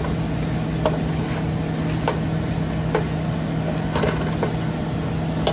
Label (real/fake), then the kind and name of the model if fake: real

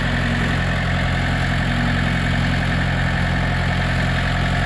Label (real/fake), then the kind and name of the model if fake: real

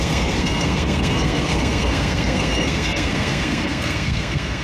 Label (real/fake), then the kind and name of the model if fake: fake, codec, SNAC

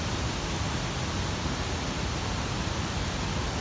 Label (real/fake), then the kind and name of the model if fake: real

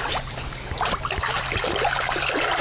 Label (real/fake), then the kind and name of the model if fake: fake, vocoder, BigVGAN v2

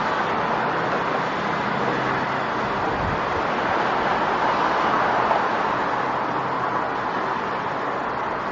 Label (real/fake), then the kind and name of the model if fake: real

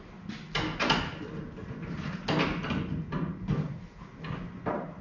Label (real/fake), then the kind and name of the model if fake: real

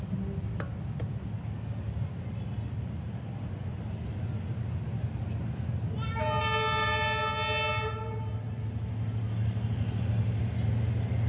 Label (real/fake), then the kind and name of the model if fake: real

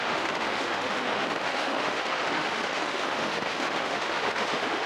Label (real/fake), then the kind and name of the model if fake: fake, autoencoder, DAC-VAE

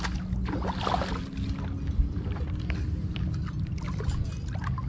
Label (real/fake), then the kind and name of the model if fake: real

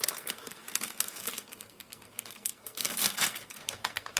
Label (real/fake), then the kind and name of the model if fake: fake, codec, SNAC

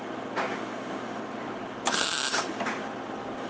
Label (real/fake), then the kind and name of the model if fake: real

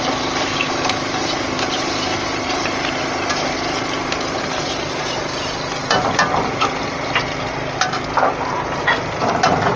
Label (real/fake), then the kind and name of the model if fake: real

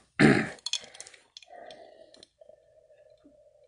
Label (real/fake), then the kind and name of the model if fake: real